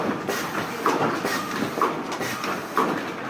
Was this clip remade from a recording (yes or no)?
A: no